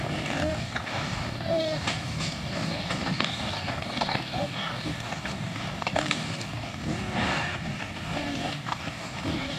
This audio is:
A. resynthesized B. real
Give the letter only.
A